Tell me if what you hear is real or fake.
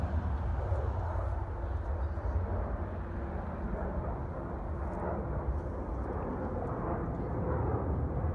real